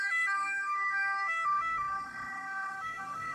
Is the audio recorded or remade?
remade